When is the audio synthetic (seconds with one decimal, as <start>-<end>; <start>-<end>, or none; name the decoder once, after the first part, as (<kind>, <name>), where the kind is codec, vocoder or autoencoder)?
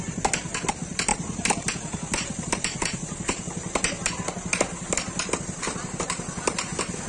none